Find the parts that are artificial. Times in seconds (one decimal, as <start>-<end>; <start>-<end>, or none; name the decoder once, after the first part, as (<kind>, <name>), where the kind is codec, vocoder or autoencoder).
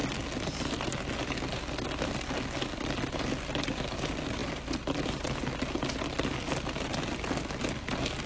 none